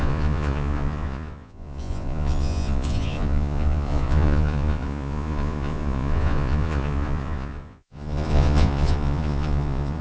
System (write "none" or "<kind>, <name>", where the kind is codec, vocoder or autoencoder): vocoder, Vocos